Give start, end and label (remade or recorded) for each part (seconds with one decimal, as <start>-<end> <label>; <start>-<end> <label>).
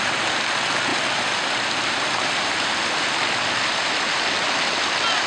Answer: 0.0-5.3 recorded